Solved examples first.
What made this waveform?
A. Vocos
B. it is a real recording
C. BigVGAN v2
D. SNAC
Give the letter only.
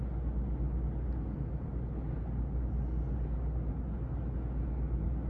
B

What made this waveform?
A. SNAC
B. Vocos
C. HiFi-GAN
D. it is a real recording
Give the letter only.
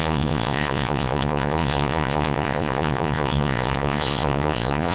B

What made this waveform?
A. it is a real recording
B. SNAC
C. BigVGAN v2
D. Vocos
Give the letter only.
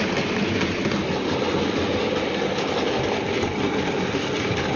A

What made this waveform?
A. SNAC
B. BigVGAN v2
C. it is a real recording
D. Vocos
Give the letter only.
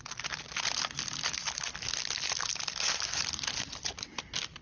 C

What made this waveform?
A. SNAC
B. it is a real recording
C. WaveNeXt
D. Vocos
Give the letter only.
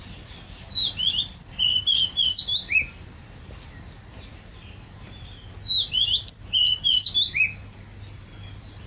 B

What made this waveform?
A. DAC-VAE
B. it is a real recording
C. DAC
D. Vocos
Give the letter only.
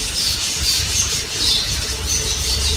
D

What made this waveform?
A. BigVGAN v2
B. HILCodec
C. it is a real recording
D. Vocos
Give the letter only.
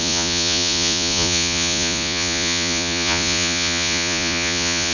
D